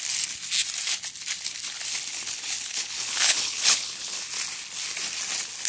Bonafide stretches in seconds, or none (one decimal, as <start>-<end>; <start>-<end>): 0.0-2.1; 4.2-5.7